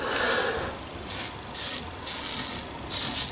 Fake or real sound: real